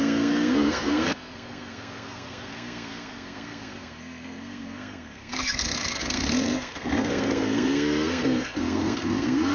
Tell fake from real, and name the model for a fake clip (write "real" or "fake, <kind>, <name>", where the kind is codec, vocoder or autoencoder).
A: fake, codec, SNAC